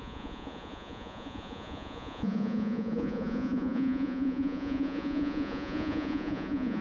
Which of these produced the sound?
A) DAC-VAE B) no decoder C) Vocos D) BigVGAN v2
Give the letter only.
C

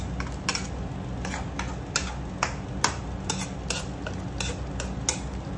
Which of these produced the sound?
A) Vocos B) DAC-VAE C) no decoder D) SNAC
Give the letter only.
C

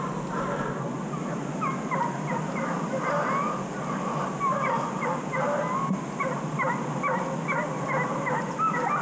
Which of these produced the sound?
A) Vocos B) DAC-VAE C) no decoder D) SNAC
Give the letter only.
C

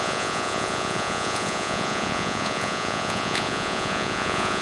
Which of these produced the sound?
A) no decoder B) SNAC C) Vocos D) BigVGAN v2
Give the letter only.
C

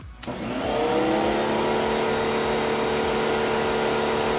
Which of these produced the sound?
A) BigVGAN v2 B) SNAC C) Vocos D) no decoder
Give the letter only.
D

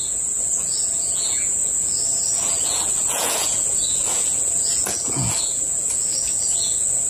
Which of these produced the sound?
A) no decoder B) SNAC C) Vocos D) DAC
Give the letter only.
C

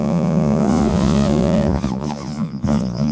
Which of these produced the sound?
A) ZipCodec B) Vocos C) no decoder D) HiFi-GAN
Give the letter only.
B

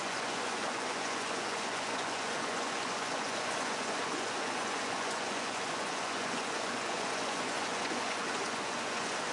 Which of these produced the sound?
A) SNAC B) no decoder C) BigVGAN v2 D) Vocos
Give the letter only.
D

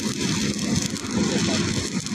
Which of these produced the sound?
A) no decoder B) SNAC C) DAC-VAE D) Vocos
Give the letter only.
A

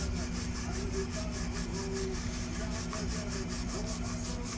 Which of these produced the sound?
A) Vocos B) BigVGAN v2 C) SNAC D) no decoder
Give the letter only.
D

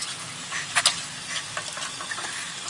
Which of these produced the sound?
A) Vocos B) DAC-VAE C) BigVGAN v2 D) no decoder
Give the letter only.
D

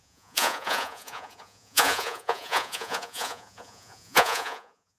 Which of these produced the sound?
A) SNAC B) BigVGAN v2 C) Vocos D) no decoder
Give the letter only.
C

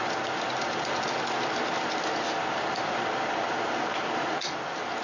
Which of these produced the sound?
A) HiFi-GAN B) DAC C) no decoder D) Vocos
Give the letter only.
C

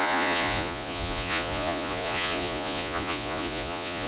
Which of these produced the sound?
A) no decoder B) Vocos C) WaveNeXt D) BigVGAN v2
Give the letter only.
B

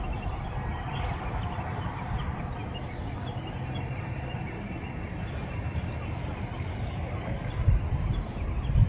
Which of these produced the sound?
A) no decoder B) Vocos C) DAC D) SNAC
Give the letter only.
A